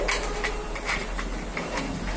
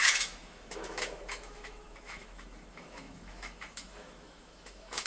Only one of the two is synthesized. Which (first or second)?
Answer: second